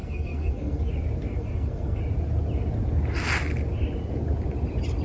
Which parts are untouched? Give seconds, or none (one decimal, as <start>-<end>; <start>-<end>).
0.9-1.3; 2.0-5.0